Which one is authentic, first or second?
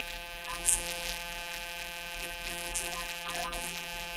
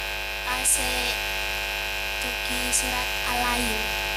second